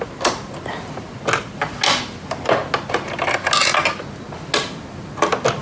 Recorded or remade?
recorded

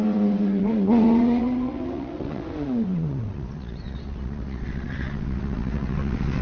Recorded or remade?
remade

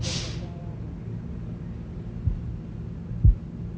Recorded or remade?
recorded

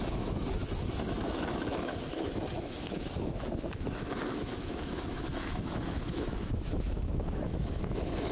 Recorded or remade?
remade